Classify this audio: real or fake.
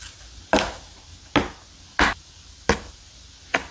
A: real